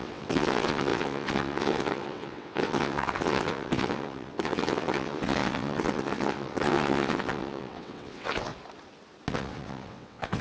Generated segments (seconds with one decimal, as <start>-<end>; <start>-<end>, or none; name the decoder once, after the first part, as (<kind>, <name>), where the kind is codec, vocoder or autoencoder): 0.0-8.5 (vocoder, WaveNeXt); 9.3-10.4